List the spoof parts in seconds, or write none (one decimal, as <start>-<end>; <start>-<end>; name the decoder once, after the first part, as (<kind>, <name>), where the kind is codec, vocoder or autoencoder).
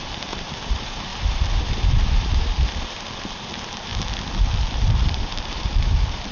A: 0.0-3.9 (vocoder, BigVGAN v2); 4.7-6.3